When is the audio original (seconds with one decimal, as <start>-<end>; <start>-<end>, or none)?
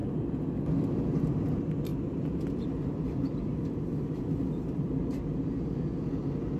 0.0-1.9; 5.2-6.6